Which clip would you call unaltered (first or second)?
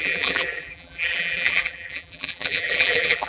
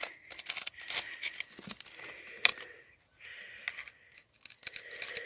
second